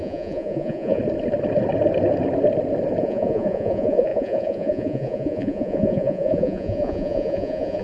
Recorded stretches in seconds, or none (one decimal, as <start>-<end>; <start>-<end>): 1.0-3.0